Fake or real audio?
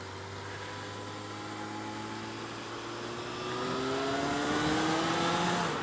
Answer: real